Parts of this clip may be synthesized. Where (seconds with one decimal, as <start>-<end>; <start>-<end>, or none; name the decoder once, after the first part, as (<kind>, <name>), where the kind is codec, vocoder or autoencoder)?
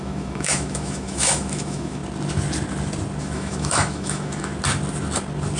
0.0-2.0 (autoencoder, DAC-VAE); 3.2-4.5